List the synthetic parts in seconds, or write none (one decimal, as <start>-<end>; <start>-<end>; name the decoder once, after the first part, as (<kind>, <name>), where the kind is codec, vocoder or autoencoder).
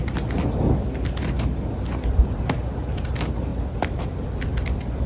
none